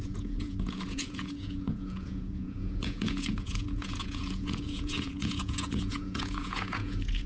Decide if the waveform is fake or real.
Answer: fake